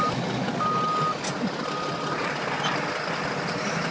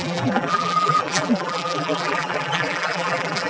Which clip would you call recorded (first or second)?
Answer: first